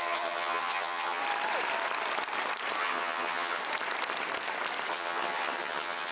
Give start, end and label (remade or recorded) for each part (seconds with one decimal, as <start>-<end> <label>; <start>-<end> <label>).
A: 0.0-1.2 remade; 1.2-2.8 recorded; 2.8-3.6 remade; 3.6-4.9 recorded; 4.9-6.1 remade